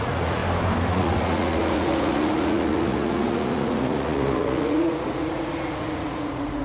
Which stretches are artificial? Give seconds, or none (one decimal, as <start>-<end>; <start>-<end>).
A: 0.0-0.4; 0.9-6.6